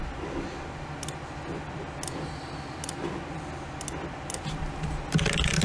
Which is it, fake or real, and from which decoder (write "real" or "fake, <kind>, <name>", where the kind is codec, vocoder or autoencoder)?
real